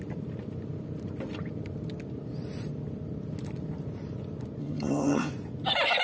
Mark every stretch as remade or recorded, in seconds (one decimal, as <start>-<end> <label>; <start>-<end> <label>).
0.0-4.6 recorded; 4.6-5.3 remade; 5.3-6.0 recorded